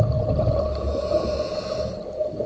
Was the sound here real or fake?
real